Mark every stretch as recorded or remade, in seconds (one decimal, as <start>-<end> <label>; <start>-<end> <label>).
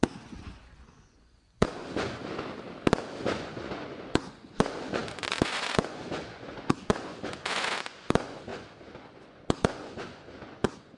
0.0-2.2 remade; 2.2-3.2 recorded; 3.2-11.0 remade